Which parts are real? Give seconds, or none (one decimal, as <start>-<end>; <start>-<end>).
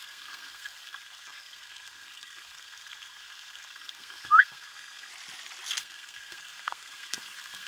5.1-5.8